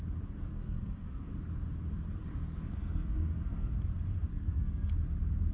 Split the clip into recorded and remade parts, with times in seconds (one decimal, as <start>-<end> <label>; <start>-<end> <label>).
0.0-0.5 recorded; 0.5-1.3 remade; 1.3-2.3 recorded; 2.3-3.7 remade; 3.7-4.3 recorded; 4.3-4.9 remade; 4.9-5.5 recorded